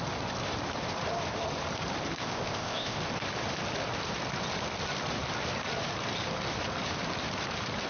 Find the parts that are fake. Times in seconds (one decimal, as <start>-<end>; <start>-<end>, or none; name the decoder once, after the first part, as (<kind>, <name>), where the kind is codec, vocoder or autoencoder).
2.2-3.0 (codec, ZipCodec)